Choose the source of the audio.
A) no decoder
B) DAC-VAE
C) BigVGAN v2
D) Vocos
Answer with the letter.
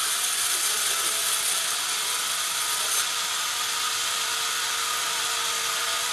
A